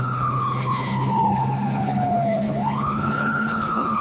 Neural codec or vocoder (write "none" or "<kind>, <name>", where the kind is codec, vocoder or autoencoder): codec, HILCodec